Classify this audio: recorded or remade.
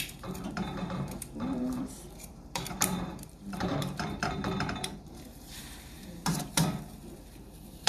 remade